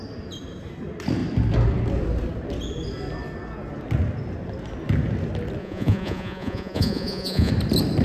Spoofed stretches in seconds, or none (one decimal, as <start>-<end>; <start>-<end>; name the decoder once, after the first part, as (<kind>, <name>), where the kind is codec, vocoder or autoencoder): 5.6-7.5 (vocoder, Vocos)